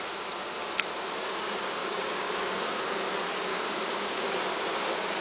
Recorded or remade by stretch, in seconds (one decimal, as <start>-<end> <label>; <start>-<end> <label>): 0.0-1.8 recorded; 1.8-2.8 remade; 2.8-3.5 recorded; 3.5-4.3 remade; 4.3-5.2 recorded